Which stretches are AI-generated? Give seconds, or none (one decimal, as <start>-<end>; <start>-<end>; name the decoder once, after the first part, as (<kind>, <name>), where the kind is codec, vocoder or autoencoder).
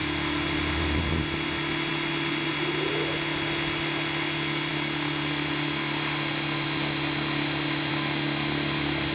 none